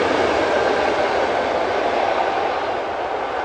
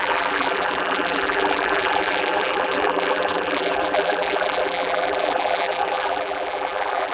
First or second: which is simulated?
second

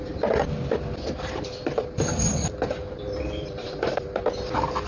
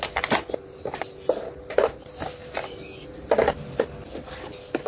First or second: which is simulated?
first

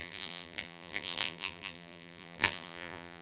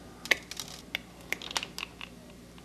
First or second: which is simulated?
first